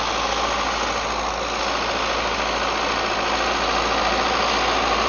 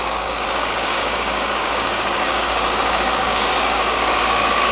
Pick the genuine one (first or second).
first